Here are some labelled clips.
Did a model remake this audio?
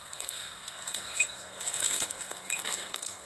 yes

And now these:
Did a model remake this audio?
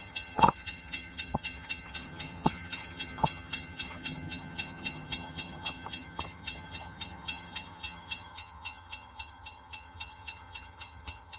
yes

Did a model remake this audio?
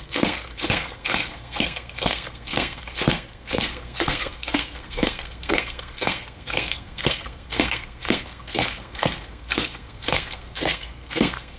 yes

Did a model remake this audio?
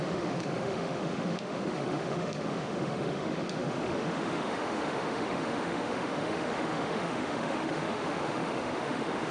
yes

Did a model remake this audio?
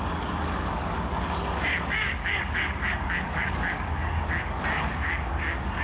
yes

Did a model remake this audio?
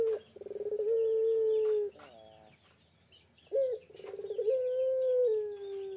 no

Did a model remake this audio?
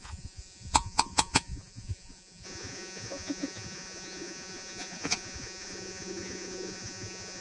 yes